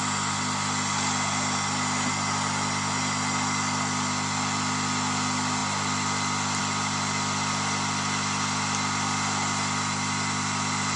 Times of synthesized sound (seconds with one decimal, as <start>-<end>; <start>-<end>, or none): none